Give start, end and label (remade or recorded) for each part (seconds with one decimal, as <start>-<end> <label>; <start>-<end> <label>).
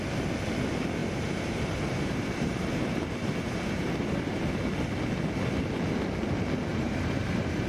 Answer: 0.0-1.0 recorded; 1.0-4.5 remade; 4.5-6.7 recorded; 6.7-7.7 remade